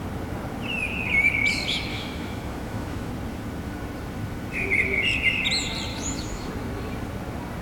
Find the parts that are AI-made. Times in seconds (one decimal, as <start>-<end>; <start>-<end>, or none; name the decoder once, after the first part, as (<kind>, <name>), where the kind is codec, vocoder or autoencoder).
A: 1.9-3.1 (autoencoder, DAC-VAE); 5.9-6.5